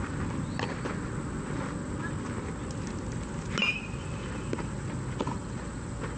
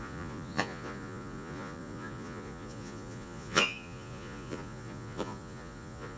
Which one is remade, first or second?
second